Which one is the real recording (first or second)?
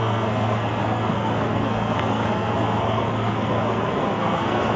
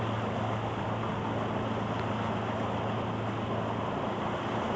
second